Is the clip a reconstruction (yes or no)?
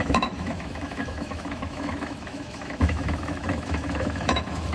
yes